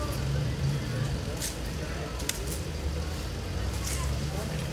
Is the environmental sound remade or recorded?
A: recorded